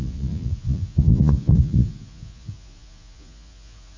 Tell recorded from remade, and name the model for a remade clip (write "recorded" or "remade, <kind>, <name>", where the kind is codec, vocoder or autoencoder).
remade, vocoder, Vocos